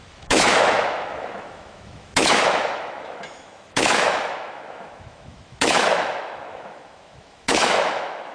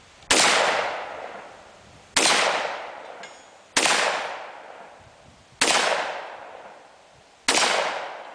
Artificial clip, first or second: first